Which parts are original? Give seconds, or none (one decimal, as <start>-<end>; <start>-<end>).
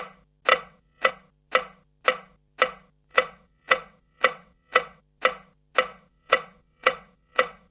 0.0-0.5; 1.1-3.1; 5.0-5.9